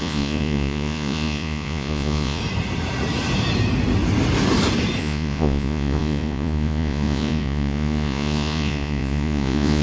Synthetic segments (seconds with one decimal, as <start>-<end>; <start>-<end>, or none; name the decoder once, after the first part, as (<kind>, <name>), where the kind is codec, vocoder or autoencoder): 0.0-2.4 (vocoder, Vocos); 5.0-9.8

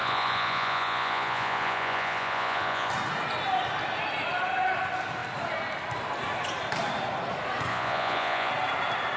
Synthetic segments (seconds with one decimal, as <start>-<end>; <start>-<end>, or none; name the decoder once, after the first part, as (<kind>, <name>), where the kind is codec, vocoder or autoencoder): 0.0-2.9 (vocoder, Vocos); 7.7-8.5

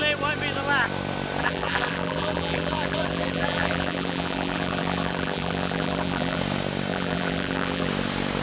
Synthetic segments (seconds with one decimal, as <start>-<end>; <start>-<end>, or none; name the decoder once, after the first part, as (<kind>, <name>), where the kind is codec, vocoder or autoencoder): 1.4-6.4 (vocoder, BigVGAN v2); 6.9-7.9

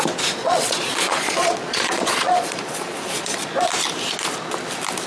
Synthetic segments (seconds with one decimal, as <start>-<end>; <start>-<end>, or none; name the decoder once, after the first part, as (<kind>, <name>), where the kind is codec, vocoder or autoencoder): 0.4-3.5 (vocoder, Vocos)

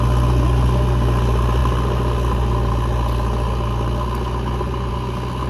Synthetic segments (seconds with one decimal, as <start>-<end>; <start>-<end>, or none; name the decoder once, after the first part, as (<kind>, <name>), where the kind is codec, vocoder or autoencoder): none

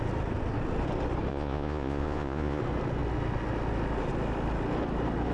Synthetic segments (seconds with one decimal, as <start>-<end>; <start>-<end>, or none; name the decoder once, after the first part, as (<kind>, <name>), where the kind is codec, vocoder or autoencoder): 1.3-2.6 (vocoder, Vocos)

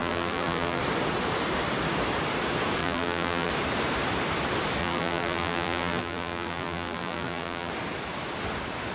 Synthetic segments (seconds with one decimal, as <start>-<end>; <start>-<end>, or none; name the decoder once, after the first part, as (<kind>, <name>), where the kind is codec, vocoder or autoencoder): 0.0-0.8 (vocoder, BigVGAN v2); 2.8-3.5; 4.8-7.7

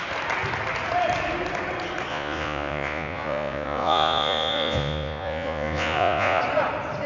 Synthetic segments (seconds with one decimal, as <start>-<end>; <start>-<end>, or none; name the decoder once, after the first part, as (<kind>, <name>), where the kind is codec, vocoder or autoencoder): 2.1-6.4 (vocoder, Vocos)